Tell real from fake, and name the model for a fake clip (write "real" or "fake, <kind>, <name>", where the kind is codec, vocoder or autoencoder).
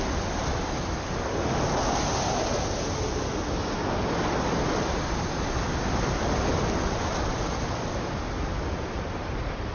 real